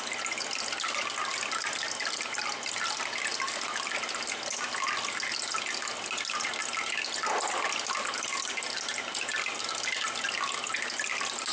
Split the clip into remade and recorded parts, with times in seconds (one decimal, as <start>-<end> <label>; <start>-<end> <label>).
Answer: 0.0-11.5 recorded